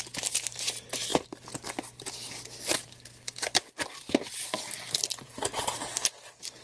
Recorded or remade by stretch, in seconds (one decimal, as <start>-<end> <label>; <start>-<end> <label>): 0.0-6.6 recorded